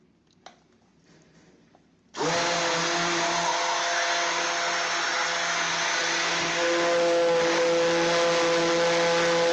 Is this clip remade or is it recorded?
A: recorded